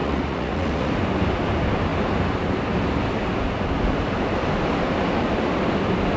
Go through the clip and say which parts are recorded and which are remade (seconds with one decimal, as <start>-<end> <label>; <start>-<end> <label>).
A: 0.0-0.9 remade; 0.9-6.2 recorded